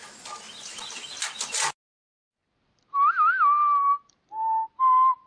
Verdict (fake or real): real